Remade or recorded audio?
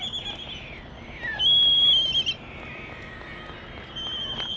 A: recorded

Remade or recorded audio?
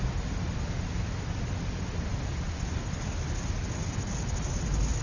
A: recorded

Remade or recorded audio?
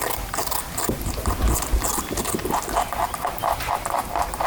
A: recorded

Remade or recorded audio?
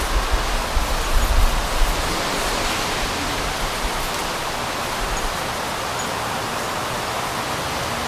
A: recorded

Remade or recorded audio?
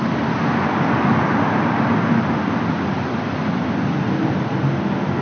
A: recorded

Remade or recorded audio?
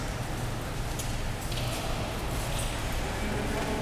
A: recorded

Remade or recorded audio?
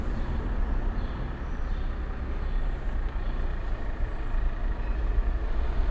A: recorded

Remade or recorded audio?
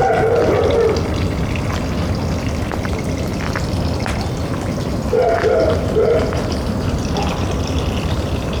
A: recorded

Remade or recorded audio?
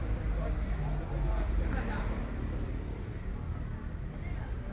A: remade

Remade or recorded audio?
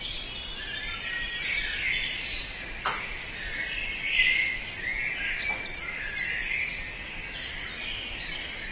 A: recorded